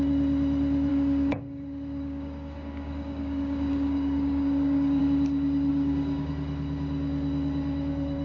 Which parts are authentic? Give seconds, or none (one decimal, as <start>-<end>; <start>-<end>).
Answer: 0.0-0.9; 5.0-5.7; 6.3-8.2